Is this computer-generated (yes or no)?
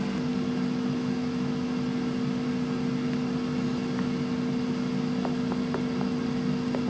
no